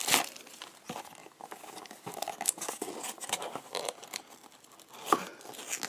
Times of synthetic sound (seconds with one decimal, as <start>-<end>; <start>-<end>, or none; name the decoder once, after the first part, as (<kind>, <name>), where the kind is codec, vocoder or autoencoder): 1.2-3.7 (codec, DAC)